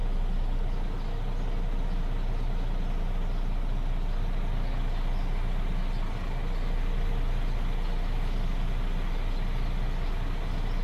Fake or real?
real